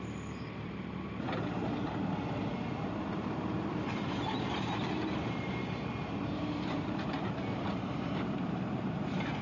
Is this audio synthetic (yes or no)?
yes